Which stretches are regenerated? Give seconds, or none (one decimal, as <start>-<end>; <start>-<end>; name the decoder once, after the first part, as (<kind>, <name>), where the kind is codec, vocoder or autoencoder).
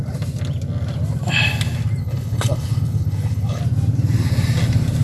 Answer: 2.0-3.6 (codec, HILCodec)